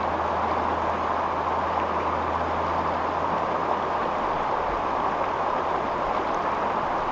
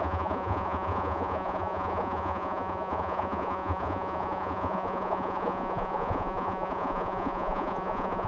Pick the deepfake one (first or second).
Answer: second